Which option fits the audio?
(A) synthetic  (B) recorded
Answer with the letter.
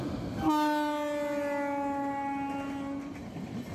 B